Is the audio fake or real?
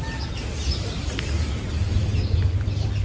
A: real